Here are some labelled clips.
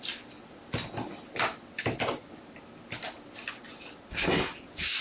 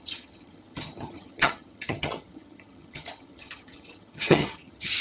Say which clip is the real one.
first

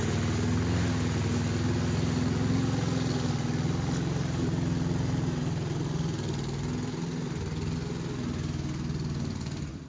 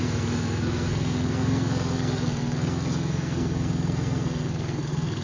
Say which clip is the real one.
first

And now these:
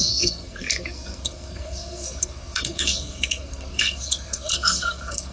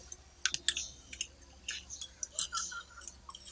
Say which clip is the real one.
second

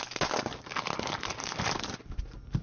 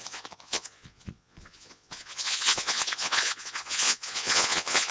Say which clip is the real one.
first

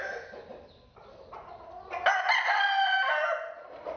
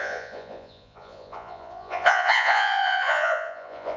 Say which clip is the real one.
first